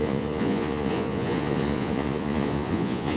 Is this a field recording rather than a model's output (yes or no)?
no